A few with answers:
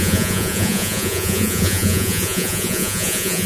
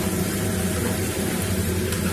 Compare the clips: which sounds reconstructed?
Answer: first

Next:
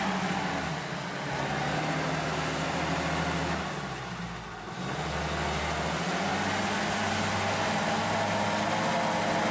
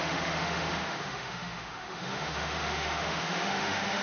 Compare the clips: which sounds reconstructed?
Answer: second